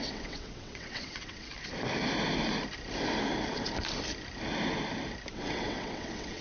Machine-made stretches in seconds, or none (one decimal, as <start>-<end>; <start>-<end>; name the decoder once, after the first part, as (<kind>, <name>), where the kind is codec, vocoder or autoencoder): 0.0-1.5 (vocoder, WaveNeXt); 5.3-6.4